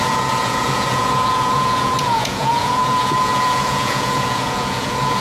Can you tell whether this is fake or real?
fake